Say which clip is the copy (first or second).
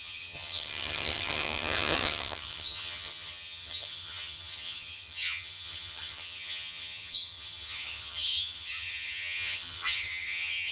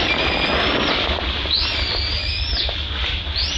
first